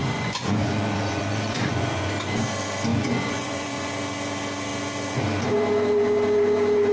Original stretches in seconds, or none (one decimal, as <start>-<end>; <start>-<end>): 2.1-2.9; 3.9-6.9